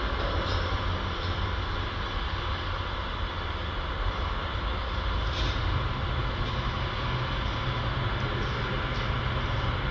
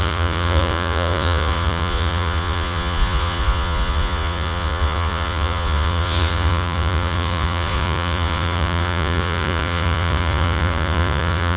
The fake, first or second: second